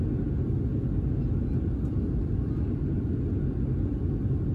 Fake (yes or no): no